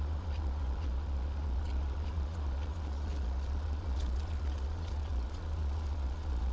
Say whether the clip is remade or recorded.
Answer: remade